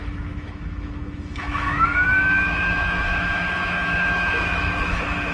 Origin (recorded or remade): remade